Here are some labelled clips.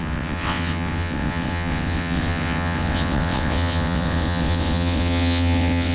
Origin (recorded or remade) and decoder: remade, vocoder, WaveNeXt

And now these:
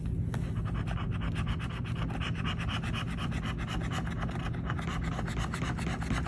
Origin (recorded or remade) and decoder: recorded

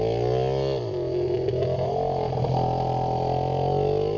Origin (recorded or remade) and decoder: recorded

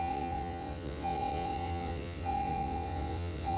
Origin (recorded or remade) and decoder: remade, vocoder, WaveNeXt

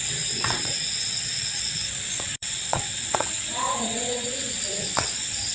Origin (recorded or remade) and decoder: remade, vocoder, WaveNeXt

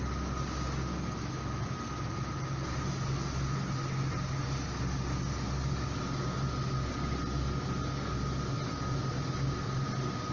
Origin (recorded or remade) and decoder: recorded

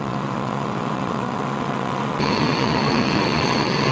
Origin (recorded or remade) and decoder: remade, vocoder, WaveNeXt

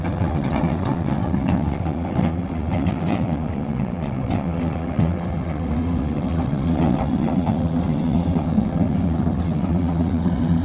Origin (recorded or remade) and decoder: remade, vocoder, WaveNeXt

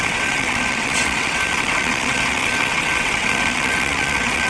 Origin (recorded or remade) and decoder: remade, vocoder, WaveNeXt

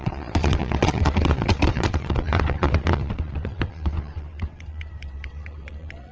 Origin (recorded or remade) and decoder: remade, vocoder, WaveNeXt